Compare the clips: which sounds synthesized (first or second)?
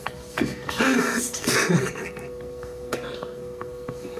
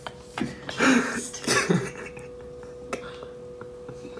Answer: first